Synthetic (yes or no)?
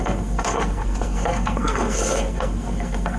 yes